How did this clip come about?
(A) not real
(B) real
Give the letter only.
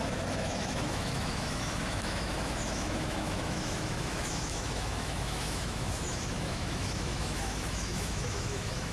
A